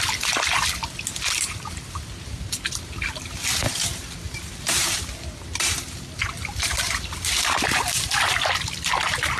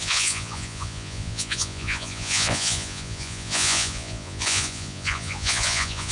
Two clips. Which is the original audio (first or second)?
first